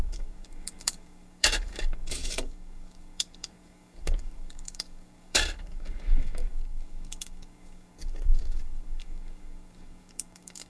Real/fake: fake